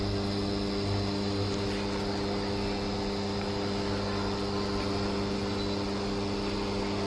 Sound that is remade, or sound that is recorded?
recorded